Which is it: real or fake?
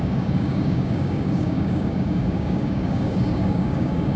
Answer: fake